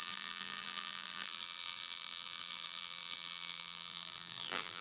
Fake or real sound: fake